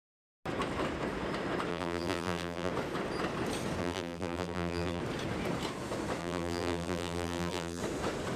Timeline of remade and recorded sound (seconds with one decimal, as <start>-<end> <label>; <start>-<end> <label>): 0.0-1.7 recorded; 1.7-2.7 remade; 2.7-3.8 recorded; 3.8-5.0 remade; 5.0-6.2 recorded; 6.2-7.8 remade; 7.8-8.4 recorded